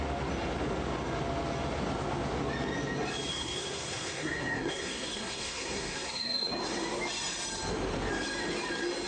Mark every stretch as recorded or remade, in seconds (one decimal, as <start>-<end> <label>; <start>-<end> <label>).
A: 0.0-3.3 recorded; 3.3-6.5 remade; 6.5-9.1 recorded